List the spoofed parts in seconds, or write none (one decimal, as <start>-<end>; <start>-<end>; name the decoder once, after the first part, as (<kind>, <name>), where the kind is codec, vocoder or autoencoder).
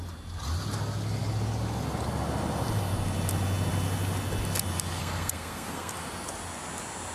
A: 5.0-5.9 (codec, SNAC)